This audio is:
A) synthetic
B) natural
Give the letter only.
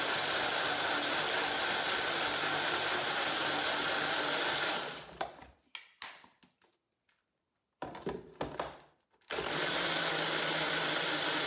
B